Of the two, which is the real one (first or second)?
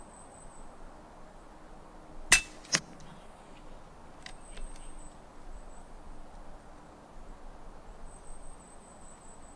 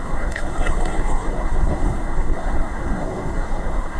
first